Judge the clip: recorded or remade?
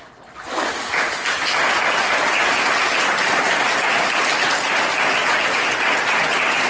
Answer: recorded